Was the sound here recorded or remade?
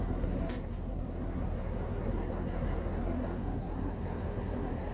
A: remade